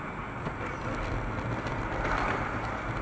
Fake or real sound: real